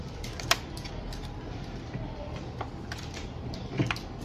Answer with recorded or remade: recorded